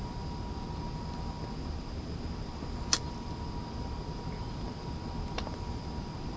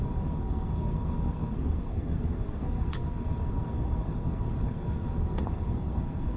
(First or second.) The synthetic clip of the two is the second